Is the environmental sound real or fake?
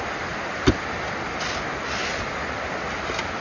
real